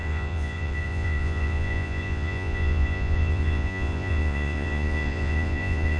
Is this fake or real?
fake